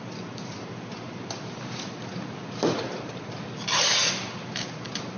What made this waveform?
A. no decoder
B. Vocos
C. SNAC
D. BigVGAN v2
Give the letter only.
D